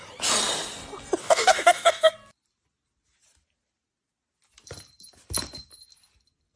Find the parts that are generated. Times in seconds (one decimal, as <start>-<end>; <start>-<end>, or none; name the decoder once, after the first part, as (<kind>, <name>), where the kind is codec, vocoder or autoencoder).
1.2-2.1 (codec, DAC)

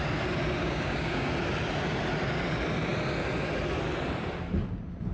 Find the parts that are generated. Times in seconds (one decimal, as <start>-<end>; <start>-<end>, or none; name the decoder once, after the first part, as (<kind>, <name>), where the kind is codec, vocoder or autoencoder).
0.6-1.3 (codec, DAC)

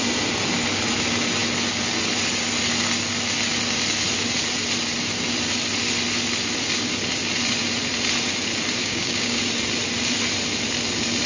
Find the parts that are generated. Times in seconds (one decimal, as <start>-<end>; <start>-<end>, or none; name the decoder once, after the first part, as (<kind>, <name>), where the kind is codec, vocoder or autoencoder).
8.8-9.4 (codec, DAC)

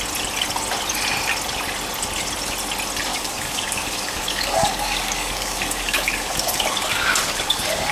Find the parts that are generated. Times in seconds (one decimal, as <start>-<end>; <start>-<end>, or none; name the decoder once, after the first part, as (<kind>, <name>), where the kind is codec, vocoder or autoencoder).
3.1-7.9 (codec, DAC)

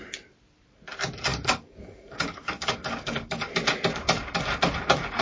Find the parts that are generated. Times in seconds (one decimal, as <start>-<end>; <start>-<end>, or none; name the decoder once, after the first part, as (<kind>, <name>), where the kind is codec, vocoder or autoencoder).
1.3-3.5 (codec, DAC)

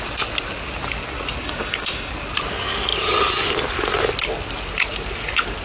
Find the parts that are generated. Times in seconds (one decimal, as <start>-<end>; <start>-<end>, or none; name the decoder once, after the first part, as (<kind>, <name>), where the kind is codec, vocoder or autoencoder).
1.4-2.1 (codec, DAC)